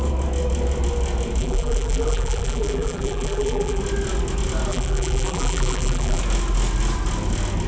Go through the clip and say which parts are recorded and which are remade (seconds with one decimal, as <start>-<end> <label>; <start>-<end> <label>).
0.0-1.4 recorded; 1.4-3.8 remade; 3.8-4.7 recorded; 4.7-6.2 remade; 6.2-7.7 recorded